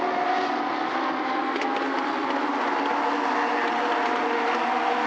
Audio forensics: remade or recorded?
recorded